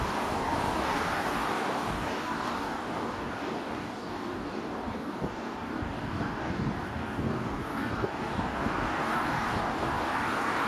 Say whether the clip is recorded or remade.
remade